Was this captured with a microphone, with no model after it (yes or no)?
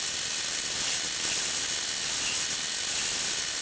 yes